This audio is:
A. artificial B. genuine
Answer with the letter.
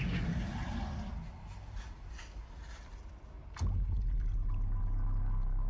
B